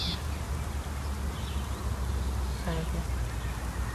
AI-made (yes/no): no